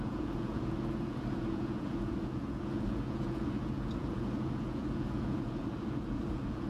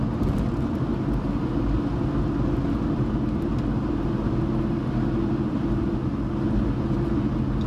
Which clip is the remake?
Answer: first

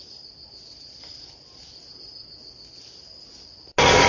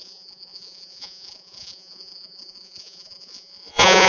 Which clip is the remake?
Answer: second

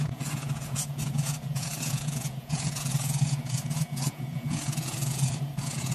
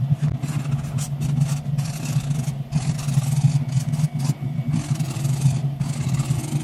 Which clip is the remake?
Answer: first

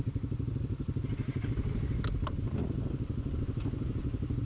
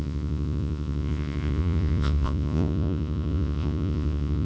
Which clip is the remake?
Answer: second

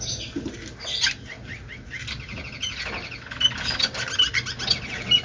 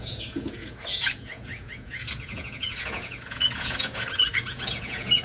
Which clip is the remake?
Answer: second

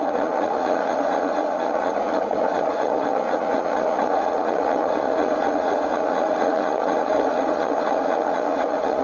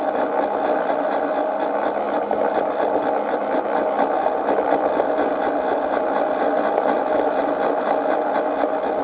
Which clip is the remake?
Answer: first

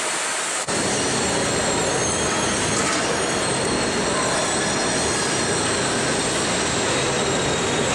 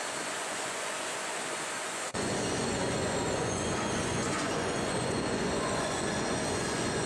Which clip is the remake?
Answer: second